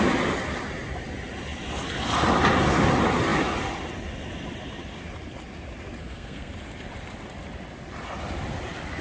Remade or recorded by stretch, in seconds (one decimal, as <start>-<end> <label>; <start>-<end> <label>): 0.0-6.0 recorded; 6.0-6.5 remade; 6.5-9.0 recorded